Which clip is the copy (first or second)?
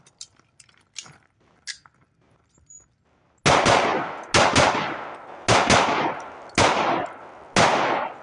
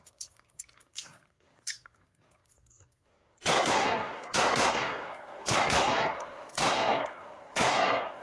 second